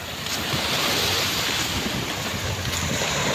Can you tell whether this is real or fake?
real